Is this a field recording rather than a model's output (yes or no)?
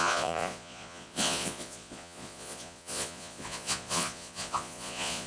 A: no